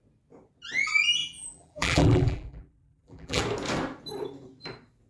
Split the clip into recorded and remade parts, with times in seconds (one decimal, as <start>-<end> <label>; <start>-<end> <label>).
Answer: 0.0-1.2 recorded; 1.2-3.4 remade; 3.4-5.1 recorded